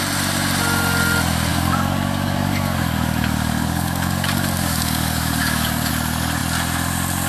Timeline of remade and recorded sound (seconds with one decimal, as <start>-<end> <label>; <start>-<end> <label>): 0.0-1.5 recorded; 1.5-5.9 remade; 5.9-7.3 recorded